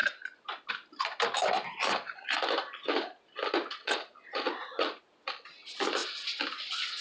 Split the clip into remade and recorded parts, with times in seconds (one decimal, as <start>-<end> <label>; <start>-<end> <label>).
0.0-3.8 recorded; 3.8-5.0 remade; 5.0-7.0 recorded